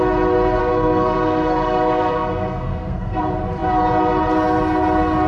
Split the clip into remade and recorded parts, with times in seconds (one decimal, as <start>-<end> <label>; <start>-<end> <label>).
0.0-0.6 recorded; 0.6-3.2 remade; 3.2-5.3 recorded